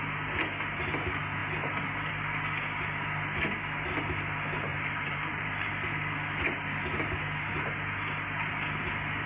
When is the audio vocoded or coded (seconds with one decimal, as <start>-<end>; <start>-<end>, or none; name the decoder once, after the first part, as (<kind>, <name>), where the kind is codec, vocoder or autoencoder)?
4.7-5.7 (vocoder, BigVGAN v2)

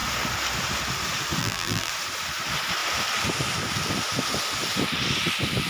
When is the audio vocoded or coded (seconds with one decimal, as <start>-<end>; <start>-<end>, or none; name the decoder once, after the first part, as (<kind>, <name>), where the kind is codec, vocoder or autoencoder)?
1.4-1.9 (vocoder, BigVGAN v2)

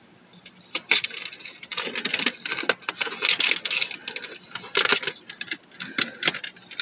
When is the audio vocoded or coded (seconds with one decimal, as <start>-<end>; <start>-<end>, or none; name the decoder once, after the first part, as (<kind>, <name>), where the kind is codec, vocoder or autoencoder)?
none

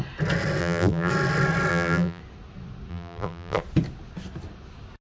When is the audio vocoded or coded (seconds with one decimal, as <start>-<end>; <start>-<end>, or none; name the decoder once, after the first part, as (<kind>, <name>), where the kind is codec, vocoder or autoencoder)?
0.6-1.1 (vocoder, BigVGAN v2); 1.7-2.2; 2.9-3.6

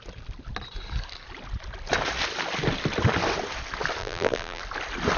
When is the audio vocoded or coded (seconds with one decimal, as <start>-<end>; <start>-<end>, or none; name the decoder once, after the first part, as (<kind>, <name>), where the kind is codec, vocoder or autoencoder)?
4.0-4.6 (vocoder, BigVGAN v2)

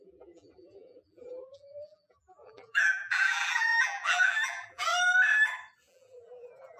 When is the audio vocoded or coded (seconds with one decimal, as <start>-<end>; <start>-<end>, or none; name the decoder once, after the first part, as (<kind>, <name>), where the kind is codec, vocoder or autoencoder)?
0.0-4.9 (vocoder, BigVGAN v2); 5.9-6.8

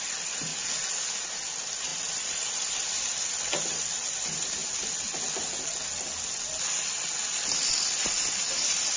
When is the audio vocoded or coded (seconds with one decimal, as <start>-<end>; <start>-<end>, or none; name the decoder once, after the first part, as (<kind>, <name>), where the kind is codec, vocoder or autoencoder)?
0.0-0.5 (vocoder, BigVGAN v2); 1.2-4.6; 6.7-9.0